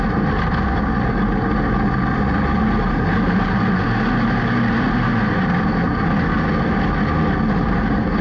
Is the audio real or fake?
real